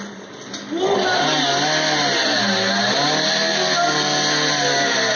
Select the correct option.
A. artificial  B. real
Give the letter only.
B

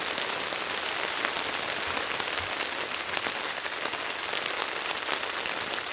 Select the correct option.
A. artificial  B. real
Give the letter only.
B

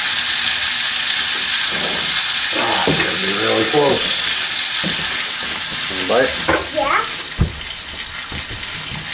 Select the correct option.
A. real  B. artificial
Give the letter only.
A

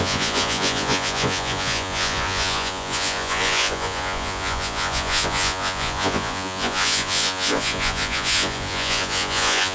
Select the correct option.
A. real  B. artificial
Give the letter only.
B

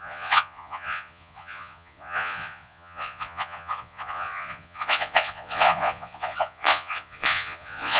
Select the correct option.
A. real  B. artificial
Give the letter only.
B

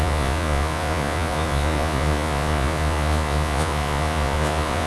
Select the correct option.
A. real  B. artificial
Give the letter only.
B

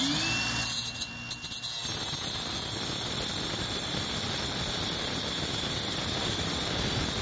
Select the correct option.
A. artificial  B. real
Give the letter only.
B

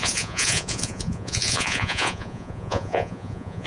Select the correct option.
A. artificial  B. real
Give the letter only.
A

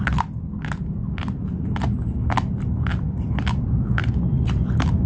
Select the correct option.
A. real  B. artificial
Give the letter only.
A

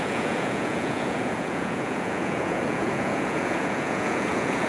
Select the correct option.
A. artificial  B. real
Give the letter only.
A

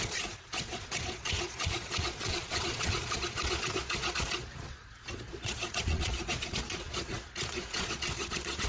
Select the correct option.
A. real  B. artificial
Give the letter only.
B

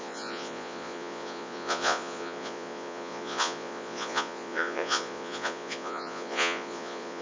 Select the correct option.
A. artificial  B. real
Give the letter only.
A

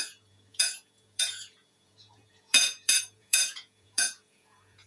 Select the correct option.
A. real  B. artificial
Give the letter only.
B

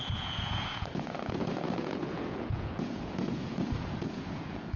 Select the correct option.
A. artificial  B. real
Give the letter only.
A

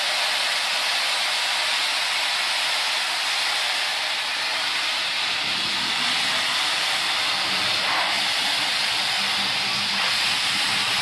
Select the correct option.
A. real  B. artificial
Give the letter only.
A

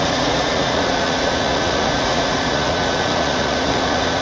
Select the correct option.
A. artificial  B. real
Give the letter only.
A